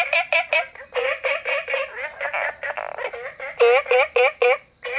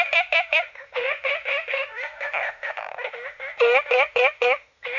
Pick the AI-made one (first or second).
second